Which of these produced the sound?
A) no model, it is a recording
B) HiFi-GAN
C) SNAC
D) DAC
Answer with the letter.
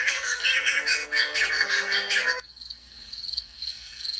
C